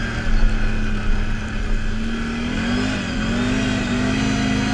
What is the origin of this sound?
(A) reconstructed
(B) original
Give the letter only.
B